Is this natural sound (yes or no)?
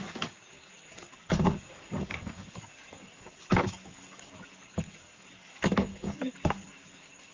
no